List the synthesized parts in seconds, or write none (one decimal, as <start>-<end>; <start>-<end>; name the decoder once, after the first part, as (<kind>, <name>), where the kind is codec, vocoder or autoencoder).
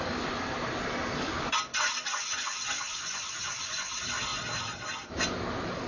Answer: 1.7-3.9 (vocoder, Vocos)